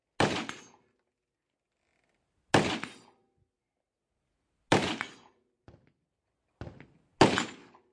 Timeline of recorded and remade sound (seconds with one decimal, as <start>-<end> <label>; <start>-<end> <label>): 0.0-7.9 recorded